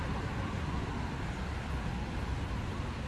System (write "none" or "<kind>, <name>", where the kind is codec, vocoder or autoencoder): none